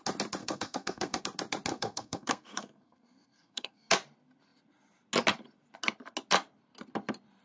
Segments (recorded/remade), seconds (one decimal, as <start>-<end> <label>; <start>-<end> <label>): 0.0-0.4 recorded; 0.4-1.2 remade; 1.2-1.7 recorded; 1.7-3.9 remade; 3.9-7.4 recorded